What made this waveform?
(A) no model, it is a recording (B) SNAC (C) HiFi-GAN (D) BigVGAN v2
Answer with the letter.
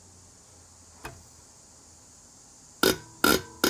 A